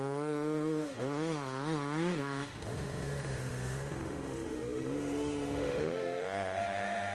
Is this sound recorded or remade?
remade